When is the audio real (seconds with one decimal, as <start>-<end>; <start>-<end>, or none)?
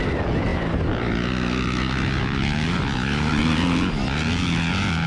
0.0-5.1